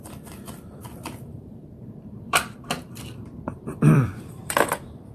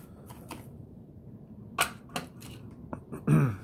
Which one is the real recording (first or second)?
second